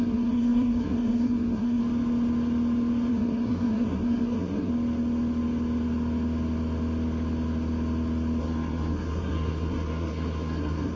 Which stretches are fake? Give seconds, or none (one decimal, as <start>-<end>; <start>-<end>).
0.0-1.8; 3.1-4.7; 8.4-11.0

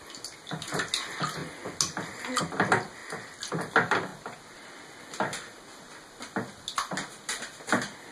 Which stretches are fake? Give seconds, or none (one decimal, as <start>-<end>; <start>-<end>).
none

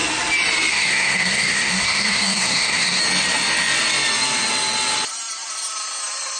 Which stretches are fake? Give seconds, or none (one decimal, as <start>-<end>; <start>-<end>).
0.7-3.0

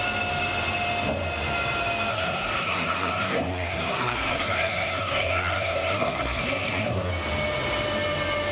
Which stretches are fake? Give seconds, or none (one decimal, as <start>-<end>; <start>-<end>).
2.1-7.1

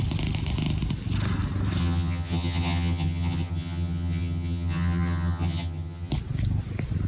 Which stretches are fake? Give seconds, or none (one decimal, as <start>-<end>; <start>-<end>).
1.8-6.1

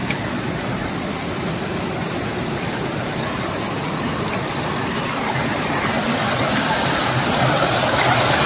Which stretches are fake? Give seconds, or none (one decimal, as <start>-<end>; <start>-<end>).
0.0-4.3

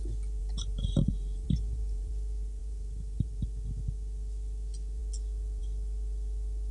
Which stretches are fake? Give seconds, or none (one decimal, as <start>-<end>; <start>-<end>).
0.4-2.1; 2.6-3.4